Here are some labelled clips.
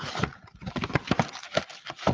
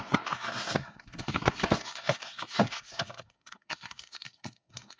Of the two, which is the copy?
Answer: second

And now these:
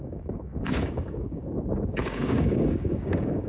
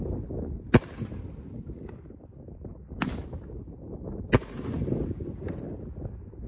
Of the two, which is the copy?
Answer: first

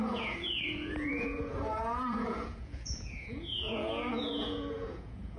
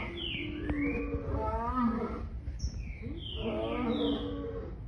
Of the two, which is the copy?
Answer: first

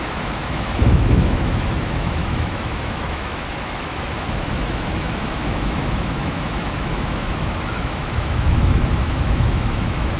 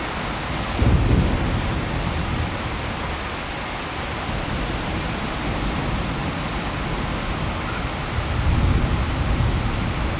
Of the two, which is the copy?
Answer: first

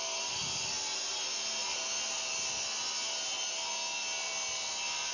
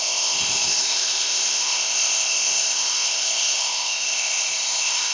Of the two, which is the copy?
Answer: second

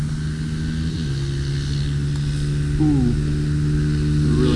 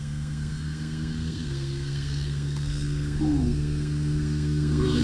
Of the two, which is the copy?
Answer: second